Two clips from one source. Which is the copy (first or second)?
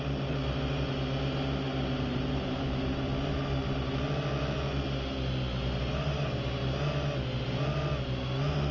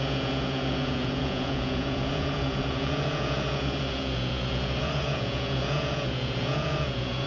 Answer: second